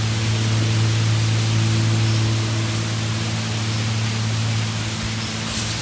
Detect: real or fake real